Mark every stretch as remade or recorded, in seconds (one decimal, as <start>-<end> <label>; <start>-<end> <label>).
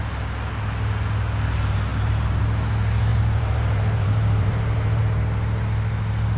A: 0.0-1.9 recorded; 1.9-2.4 remade; 2.4-3.1 recorded; 3.1-5.0 remade; 5.0-6.4 recorded